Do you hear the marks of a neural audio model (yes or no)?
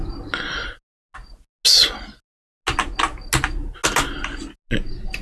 no